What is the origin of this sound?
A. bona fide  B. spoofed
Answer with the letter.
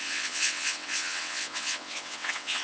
B